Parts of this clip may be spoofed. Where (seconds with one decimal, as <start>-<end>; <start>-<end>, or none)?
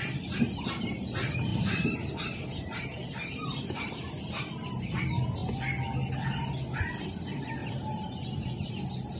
1.5-4.8; 7.6-8.7